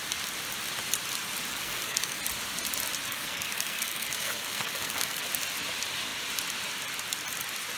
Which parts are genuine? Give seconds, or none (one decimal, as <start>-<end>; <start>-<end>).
0.0-1.5; 2.2-3.1; 5.3-7.8